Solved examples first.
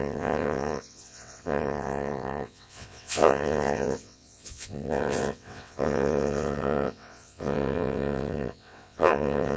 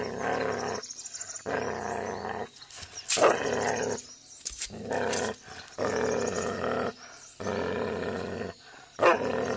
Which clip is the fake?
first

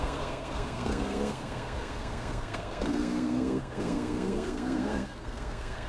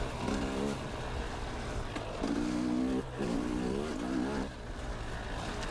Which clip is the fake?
first